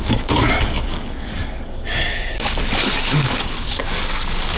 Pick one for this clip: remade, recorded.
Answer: remade